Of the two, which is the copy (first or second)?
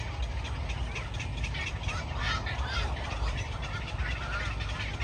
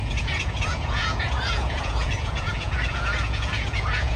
second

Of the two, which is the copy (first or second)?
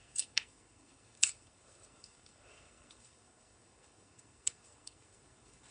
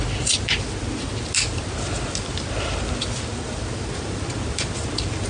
first